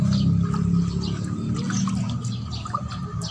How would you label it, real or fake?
real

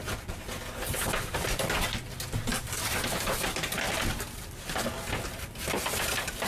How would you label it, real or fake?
real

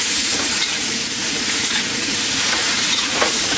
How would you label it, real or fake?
fake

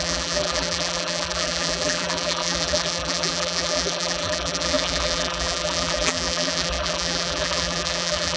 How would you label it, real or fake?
fake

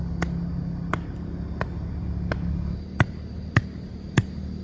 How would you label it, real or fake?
real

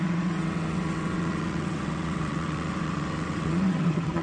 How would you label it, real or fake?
fake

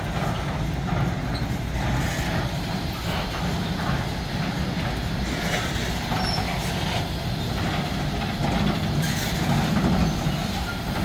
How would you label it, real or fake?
real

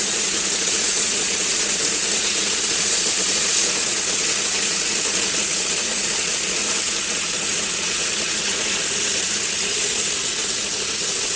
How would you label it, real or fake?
fake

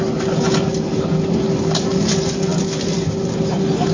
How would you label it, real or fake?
real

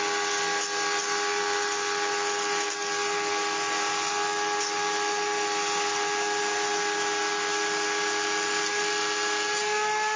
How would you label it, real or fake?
real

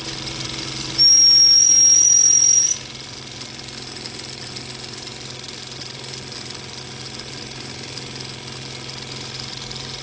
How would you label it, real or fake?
real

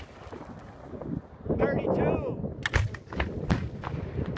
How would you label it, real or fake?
real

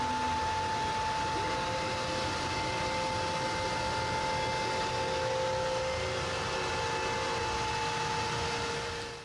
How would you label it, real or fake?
real